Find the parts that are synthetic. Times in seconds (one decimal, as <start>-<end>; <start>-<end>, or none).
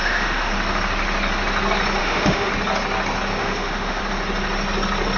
0.0-0.5; 2.0-2.5; 3.4-4.0